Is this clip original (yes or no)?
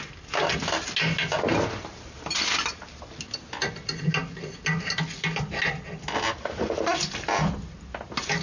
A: yes